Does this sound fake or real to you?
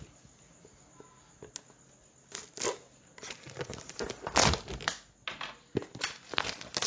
real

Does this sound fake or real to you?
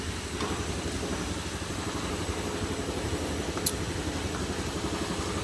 real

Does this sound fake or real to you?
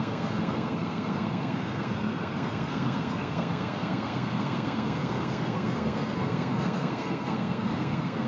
fake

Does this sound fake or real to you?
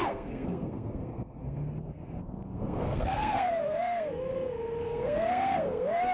fake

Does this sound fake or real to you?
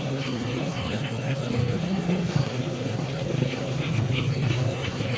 fake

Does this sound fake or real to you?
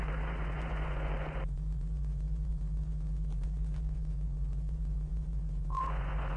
fake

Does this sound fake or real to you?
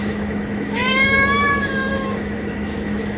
fake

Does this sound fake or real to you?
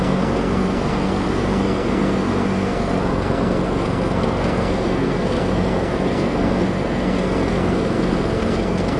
fake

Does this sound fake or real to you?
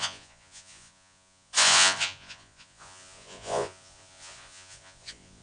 fake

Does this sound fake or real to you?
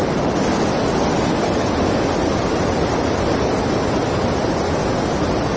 real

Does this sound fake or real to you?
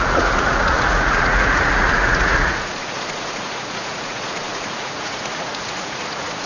fake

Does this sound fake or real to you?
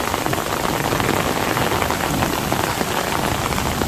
real